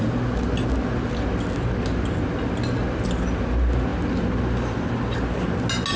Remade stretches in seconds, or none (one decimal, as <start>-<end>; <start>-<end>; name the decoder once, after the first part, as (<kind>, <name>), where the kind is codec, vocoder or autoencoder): none